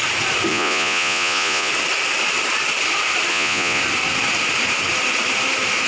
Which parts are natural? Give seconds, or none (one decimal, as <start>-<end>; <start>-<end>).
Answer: 0.0-0.5; 1.7-3.3; 3.8-5.9